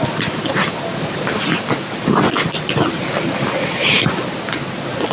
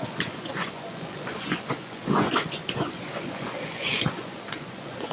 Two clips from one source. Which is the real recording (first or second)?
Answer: first